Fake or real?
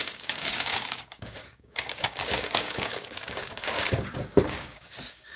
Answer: fake